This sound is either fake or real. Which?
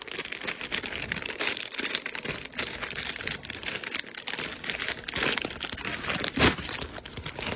real